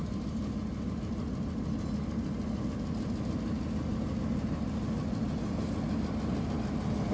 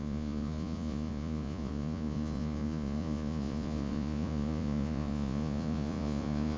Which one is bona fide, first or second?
first